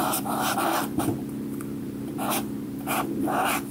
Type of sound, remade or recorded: remade